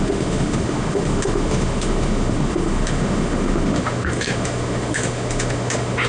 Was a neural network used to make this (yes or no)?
yes